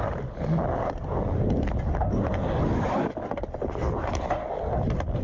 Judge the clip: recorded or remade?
recorded